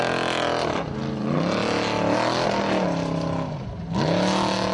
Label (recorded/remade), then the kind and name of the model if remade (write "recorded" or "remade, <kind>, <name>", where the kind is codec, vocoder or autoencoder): recorded